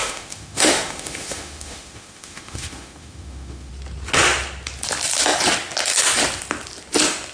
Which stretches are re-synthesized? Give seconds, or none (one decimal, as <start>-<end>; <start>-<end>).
0.0-3.7